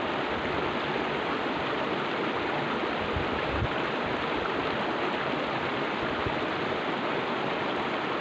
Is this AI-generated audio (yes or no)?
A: no